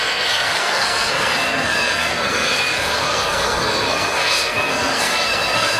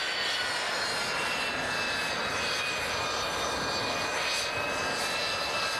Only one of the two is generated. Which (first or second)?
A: first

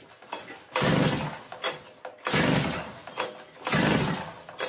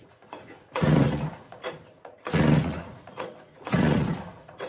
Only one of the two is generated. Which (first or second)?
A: second